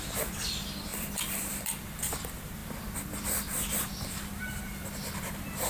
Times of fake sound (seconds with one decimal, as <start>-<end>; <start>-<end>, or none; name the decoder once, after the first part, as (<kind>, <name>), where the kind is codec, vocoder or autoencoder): 0.0-5.7 (vocoder, BigVGAN v2)